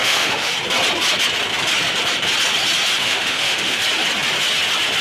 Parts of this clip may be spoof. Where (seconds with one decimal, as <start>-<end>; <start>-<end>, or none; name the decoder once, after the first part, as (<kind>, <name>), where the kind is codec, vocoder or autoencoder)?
0.0-0.5 (autoencoder, DAC-VAE); 3.0-3.8